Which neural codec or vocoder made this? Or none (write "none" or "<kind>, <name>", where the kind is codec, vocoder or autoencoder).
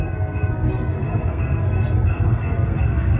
codec, SNAC